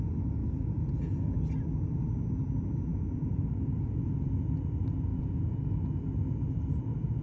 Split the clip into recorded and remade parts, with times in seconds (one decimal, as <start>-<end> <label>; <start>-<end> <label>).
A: 0.0-0.4 recorded; 0.4-1.4 remade; 1.4-2.9 recorded; 2.9-4.3 remade; 4.3-5.1 recorded; 5.1-5.6 remade; 5.6-7.2 recorded